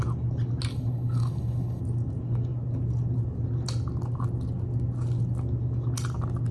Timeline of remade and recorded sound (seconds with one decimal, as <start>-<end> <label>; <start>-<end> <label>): 0.0-0.7 recorded; 0.7-1.8 remade; 1.8-6.5 recorded